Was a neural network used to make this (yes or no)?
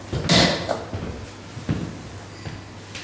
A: no